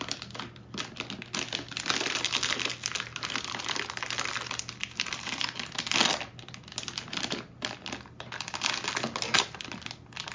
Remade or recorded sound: recorded